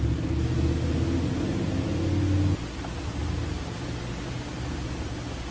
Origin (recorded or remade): recorded